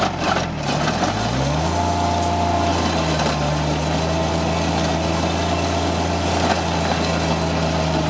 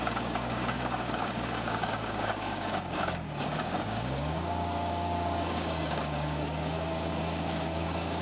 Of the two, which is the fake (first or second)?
second